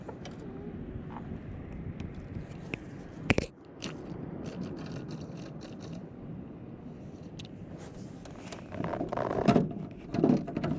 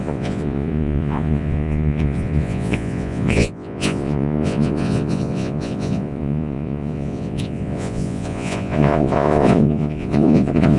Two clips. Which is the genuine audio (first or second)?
first